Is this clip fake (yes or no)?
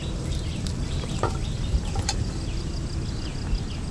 no